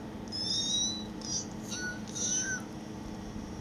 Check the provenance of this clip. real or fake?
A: real